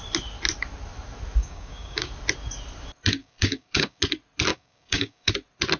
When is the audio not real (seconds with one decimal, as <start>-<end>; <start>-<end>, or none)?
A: 1.4-2.1; 3.2-4.0; 4.5-5.3